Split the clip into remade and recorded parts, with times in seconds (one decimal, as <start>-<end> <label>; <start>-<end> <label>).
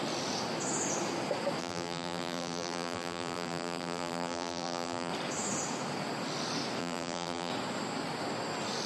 0.0-1.6 recorded; 1.6-5.1 remade; 5.1-6.8 recorded; 6.8-7.5 remade; 7.5-8.9 recorded